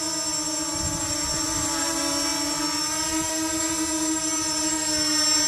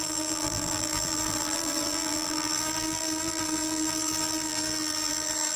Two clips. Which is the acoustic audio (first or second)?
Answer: first